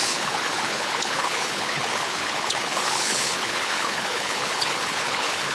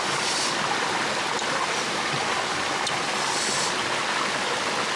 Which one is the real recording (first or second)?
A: second